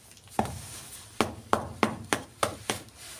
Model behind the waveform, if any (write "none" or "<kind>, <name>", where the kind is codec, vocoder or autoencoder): none